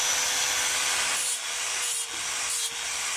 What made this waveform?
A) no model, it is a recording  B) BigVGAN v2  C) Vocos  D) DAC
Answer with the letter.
A